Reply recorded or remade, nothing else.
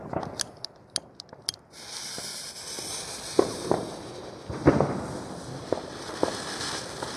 recorded